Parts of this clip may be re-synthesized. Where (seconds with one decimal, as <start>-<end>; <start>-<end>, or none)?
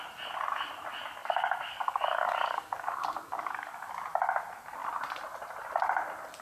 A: 1.2-3.9